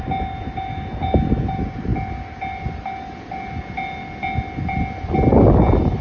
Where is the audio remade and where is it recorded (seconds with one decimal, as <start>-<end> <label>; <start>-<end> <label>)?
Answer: 0.0-6.0 recorded

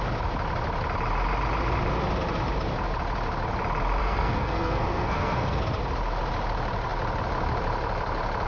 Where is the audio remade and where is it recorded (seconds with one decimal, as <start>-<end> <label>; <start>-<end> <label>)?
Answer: 0.0-4.0 recorded; 4.0-5.6 remade; 5.6-8.5 recorded

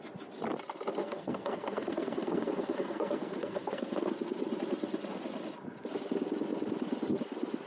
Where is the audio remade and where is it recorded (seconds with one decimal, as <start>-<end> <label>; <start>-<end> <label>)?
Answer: 0.0-1.0 recorded; 1.0-4.1 remade; 4.1-7.7 recorded

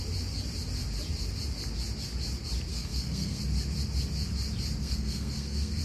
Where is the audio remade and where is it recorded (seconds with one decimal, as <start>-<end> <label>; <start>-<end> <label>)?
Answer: 0.0-2.7 recorded; 2.7-3.4 remade; 3.4-4.8 recorded; 4.8-5.8 remade

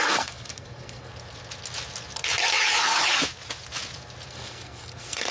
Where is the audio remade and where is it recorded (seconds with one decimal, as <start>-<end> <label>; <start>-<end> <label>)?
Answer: 0.0-1.1 remade; 1.1-4.3 recorded; 4.3-5.3 remade